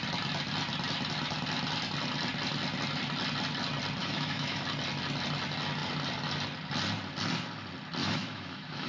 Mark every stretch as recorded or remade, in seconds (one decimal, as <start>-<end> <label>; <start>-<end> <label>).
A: 0.0-4.0 recorded; 4.0-4.6 remade; 4.6-8.0 recorded; 8.0-8.9 remade